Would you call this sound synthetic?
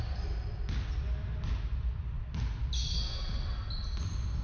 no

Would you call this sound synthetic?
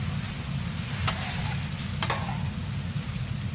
no